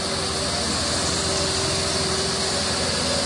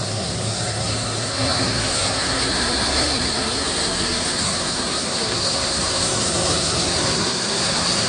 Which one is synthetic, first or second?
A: second